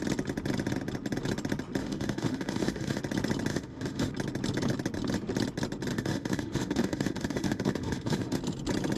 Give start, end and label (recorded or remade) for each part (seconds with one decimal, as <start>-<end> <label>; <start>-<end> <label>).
0.0-1.8 recorded; 1.8-3.0 remade; 3.0-3.5 recorded; 3.5-4.1 remade; 4.1-5.9 recorded; 5.9-8.4 remade; 8.4-9.0 recorded